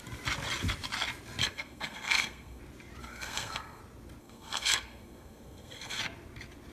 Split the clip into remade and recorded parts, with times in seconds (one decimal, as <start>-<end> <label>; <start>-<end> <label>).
0.0-1.4 recorded; 1.4-2.6 remade; 2.6-3.0 recorded; 3.0-3.8 remade; 3.8-4.2 recorded; 4.2-6.0 remade; 6.0-6.7 recorded